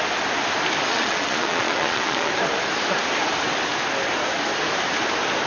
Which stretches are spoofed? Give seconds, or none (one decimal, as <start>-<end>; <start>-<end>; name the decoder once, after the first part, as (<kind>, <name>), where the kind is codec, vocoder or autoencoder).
0.9-2.3 (vocoder, Vocos)